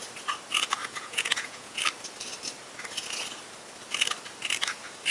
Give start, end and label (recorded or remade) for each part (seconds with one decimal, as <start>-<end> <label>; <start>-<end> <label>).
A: 0.0-0.8 recorded; 0.8-1.8 remade; 1.8-5.1 recorded